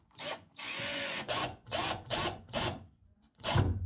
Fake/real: fake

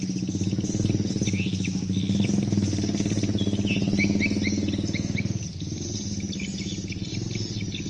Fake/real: real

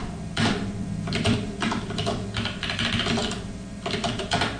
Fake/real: fake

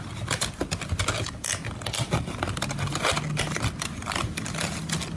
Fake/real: real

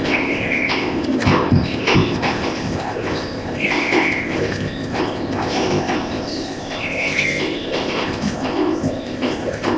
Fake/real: fake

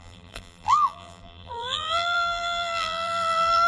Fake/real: fake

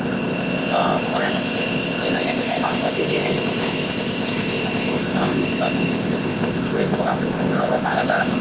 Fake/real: fake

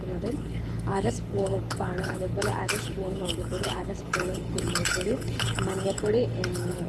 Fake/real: fake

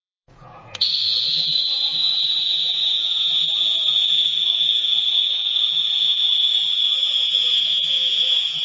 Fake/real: fake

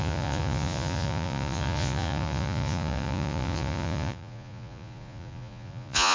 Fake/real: fake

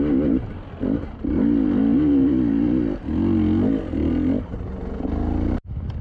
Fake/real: real